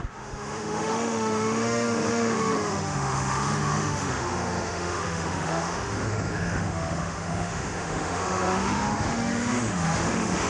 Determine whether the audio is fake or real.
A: fake